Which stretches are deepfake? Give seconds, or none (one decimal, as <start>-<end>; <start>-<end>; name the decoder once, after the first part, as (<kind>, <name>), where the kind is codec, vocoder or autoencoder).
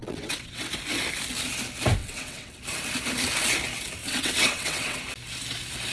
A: 0.0-0.7 (vocoder, WaveNeXt); 2.0-2.6; 4.0-5.0